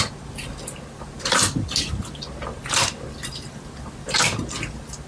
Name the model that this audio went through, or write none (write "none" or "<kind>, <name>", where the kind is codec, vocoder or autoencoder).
none